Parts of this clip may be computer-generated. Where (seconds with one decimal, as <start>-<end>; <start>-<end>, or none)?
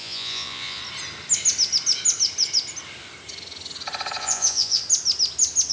0.0-0.8; 4.2-4.8